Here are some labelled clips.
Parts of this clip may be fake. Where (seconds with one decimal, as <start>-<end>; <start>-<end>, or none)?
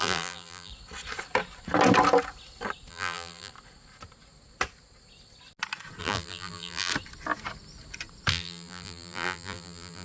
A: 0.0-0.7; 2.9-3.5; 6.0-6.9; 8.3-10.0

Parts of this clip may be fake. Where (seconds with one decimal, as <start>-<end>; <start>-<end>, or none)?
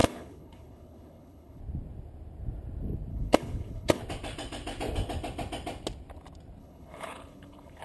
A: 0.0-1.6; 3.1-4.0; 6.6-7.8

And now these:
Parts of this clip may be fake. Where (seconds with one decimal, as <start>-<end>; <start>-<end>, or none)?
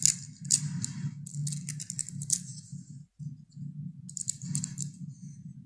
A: none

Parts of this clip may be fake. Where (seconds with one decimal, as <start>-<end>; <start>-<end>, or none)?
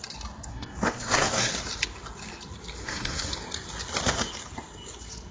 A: 0.5-1.5; 2.8-3.3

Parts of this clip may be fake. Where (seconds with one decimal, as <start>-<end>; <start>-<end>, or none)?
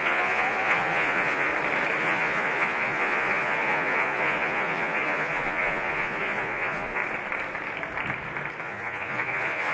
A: 0.0-1.5; 2.0-7.0; 8.6-9.7